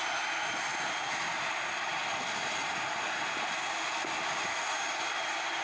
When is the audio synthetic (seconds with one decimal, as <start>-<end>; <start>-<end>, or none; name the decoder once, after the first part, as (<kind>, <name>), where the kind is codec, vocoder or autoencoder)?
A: 0.7-1.3 (vocoder, BigVGAN v2); 1.9-5.6